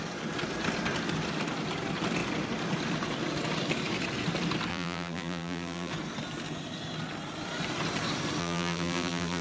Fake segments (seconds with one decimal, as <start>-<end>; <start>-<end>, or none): 4.7-5.9; 8.4-9.4